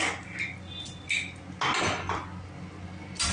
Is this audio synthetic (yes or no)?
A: no